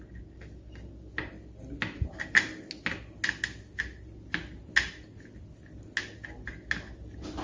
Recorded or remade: recorded